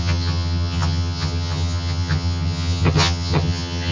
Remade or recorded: remade